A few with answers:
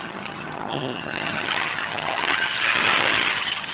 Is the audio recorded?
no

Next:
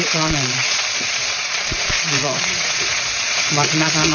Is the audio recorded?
no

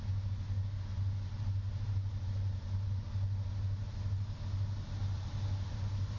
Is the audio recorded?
yes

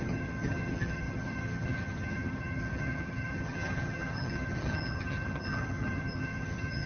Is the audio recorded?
no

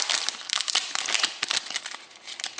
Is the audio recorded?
yes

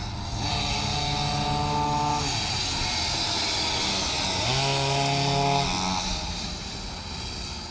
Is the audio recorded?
yes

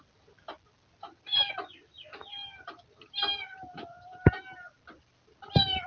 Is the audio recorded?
yes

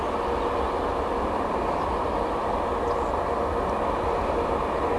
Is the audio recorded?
yes